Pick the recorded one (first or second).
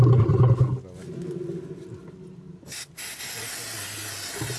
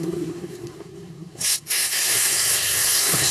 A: first